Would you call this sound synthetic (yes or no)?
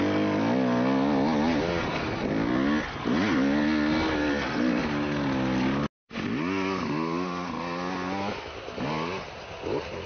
no